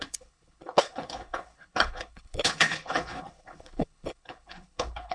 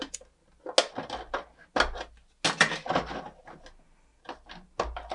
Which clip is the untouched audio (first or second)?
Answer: second